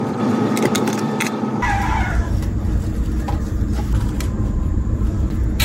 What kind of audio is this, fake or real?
fake